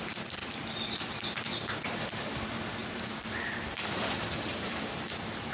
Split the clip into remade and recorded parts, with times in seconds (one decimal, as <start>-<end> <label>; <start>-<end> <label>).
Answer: 0.0-0.4 remade; 0.4-1.5 recorded; 1.5-5.5 remade